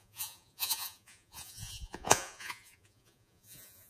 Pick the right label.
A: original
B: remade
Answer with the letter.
B